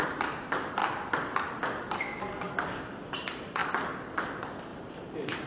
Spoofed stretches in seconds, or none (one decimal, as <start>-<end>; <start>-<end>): 0.0-0.8; 1.4-2.1; 2.8-3.6; 4.2-5.5